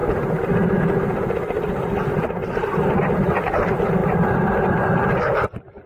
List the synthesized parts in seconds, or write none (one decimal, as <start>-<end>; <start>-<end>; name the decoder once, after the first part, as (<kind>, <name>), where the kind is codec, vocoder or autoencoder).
none